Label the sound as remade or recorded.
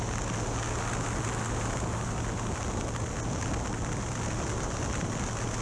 recorded